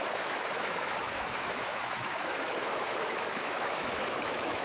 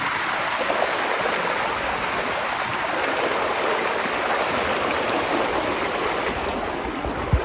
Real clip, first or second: second